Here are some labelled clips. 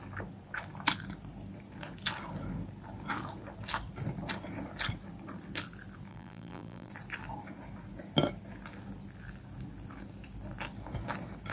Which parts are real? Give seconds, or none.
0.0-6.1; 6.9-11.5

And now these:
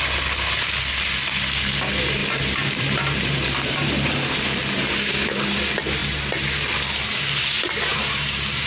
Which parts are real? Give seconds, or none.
0.0-2.2; 5.4-7.9

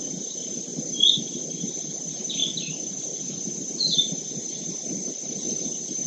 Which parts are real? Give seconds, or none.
0.0-2.4; 3.2-6.1

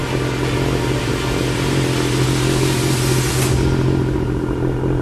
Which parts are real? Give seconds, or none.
0.0-5.0

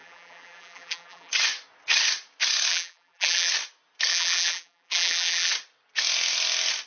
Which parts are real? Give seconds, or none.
1.3-2.7; 3.5-4.1; 5.5-6.9

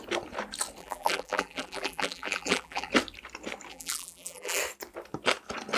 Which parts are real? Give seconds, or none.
0.0-0.8; 2.9-3.7; 4.6-5.8